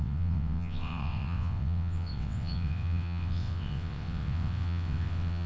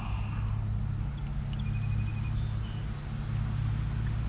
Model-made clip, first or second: first